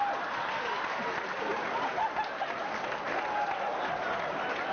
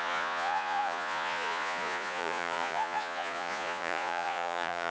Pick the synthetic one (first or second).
second